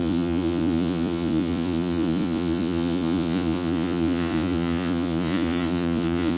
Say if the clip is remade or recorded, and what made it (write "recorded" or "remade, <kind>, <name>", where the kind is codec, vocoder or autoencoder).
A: remade, vocoder, Vocos